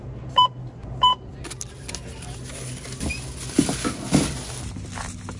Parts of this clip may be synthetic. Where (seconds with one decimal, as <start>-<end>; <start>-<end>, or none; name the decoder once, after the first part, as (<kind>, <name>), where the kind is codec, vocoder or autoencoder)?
1.1-1.9 (vocoder, BigVGAN v2)